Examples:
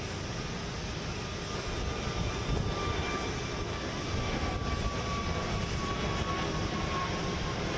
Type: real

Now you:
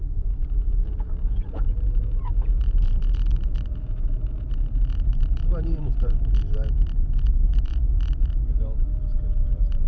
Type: fake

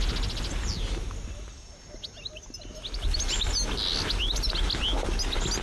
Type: real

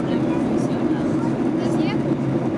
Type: real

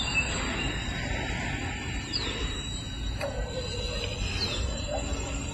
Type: fake